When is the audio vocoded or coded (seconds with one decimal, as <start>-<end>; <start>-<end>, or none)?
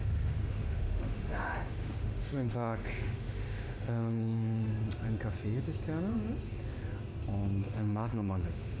0.0-4.7; 7.6-8.8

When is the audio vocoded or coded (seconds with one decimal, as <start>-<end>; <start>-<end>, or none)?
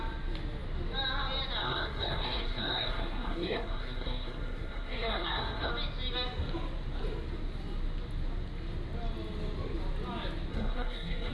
1.6-5.7; 10.5-11.3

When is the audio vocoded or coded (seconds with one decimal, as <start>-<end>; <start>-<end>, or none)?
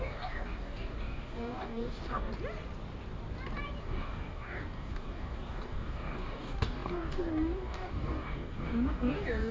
0.0-2.3; 3.8-9.5